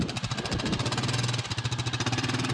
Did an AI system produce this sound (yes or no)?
no